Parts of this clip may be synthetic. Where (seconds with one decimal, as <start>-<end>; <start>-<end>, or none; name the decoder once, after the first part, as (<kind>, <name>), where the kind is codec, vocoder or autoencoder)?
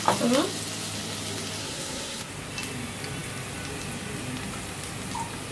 1.6-2.3 (codec, SNAC)